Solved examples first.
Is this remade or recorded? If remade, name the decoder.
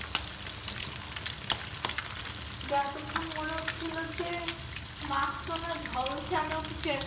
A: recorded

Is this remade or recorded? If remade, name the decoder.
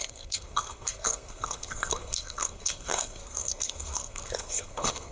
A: remade, codec, SNAC